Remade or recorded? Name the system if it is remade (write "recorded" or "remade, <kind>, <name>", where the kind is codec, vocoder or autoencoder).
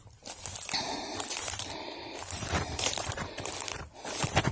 remade, vocoder, BigVGAN v2